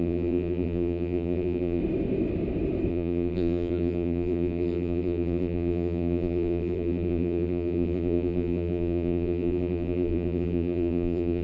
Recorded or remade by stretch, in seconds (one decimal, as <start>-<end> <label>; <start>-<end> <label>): 0.0-1.8 remade; 1.8-2.9 recorded; 2.9-11.4 remade